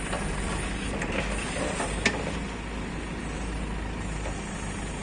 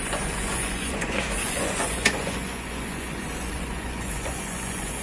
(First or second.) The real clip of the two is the first